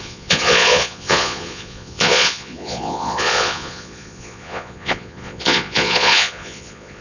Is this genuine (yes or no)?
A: no